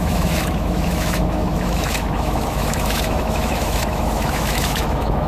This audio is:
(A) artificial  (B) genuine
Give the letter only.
A